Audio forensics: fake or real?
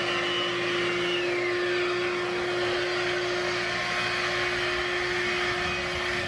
real